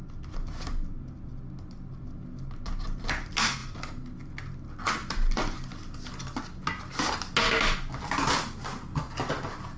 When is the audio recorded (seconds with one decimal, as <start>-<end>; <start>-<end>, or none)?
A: 0.0-9.8